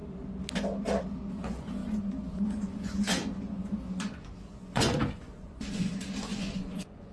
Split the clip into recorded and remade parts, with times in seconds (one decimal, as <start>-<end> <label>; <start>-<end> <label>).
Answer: 0.0-1.3 recorded; 1.3-7.1 remade